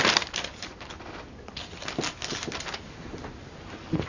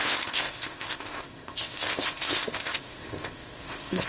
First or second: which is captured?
first